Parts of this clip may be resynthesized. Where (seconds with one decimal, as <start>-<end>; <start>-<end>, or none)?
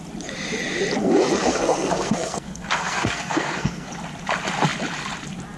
1.0-3.9